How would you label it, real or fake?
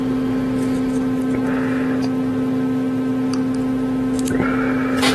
real